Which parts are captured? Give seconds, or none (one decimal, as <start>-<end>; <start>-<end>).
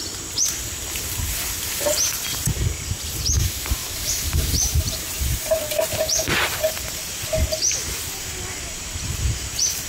0.0-3.8; 5.6-8.7